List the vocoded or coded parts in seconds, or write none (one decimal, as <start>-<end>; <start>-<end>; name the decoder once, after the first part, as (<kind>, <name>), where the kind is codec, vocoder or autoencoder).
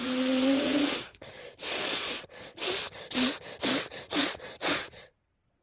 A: 0.0-2.6 (vocoder, Vocos); 4.1-5.6